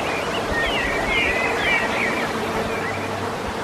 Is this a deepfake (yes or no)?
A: no